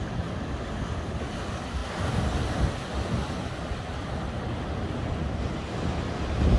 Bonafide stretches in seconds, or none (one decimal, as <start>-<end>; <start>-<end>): 0.0-6.6

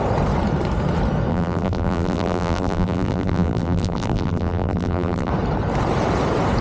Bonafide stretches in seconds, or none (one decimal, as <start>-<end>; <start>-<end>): 0.0-1.3; 5.3-6.6

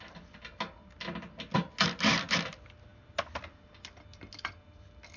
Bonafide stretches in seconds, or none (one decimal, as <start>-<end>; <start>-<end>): 0.0-5.2

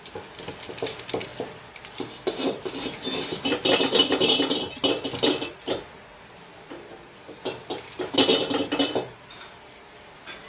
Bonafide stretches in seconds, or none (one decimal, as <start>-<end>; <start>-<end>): 0.0-10.5

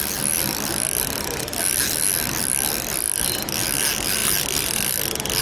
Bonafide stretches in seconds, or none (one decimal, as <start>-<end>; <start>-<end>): 0.0-5.4

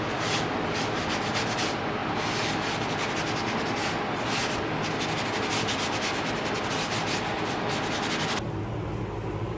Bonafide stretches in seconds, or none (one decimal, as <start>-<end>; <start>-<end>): 0.0-9.6

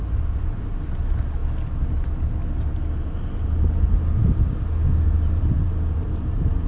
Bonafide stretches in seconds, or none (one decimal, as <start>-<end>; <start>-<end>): 1.4-5.4

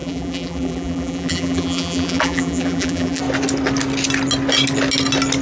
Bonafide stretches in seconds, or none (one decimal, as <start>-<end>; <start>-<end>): 3.2-5.4